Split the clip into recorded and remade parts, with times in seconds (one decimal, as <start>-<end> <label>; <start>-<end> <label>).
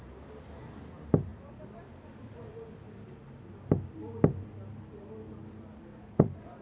0.0-5.9 recorded; 5.9-6.6 remade